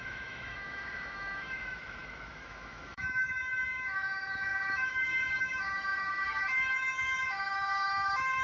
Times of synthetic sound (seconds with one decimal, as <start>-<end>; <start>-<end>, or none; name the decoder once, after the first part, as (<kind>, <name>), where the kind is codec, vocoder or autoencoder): 0.0-8.4 (autoencoder, DAC-VAE)